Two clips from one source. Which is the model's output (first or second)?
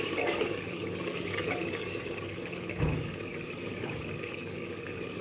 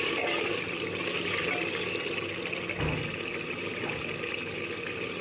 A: first